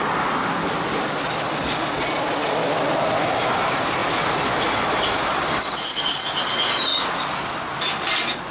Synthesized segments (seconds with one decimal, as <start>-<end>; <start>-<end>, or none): none

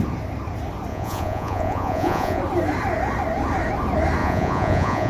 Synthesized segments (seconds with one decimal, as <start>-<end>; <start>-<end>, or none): 0.9-2.4; 4.2-5.1

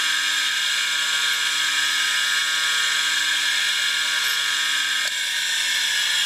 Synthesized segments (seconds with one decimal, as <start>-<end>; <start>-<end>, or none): none

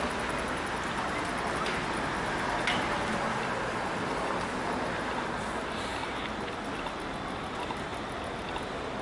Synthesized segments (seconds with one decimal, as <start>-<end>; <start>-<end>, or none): none